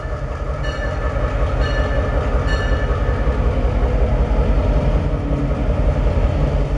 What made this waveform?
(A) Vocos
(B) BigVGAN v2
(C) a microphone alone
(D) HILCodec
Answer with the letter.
C